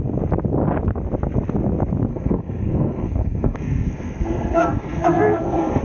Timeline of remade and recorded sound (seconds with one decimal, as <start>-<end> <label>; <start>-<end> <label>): 0.0-2.1 recorded; 2.1-5.8 remade